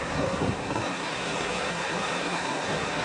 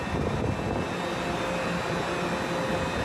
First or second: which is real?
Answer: second